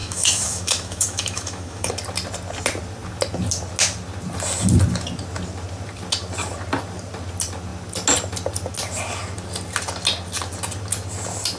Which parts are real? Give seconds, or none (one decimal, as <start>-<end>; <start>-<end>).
1.9-11.6